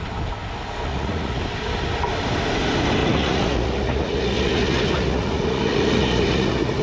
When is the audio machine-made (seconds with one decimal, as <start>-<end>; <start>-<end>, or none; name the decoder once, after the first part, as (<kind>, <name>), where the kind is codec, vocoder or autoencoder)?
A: 0.9-1.4 (vocoder, Vocos); 3.0-6.8